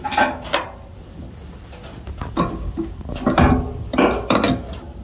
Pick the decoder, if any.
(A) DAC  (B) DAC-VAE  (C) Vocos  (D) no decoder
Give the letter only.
D